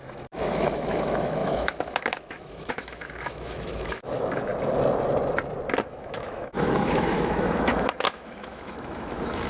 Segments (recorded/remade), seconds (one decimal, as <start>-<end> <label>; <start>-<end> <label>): 0.0-4.5 remade; 4.5-5.9 recorded; 5.9-9.5 remade